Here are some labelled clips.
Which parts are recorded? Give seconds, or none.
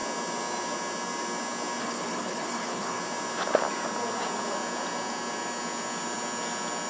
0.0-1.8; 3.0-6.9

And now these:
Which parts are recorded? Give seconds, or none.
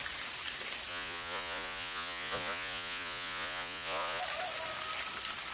0.0-0.9; 4.2-5.5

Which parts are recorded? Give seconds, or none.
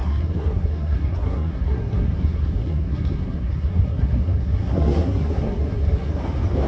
6.2-6.7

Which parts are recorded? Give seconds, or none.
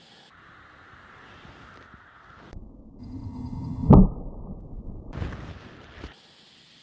0.0-3.0; 3.9-6.8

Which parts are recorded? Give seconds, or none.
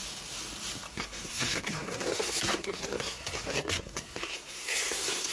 0.0-0.9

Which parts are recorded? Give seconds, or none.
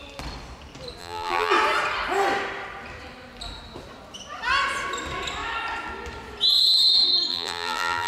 0.0-1.0; 1.5-7.3